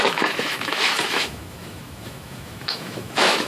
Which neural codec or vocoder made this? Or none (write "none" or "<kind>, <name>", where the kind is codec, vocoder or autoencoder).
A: autoencoder, DAC-VAE